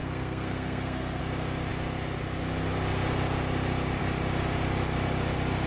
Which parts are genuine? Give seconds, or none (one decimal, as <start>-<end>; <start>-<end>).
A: 1.2-5.7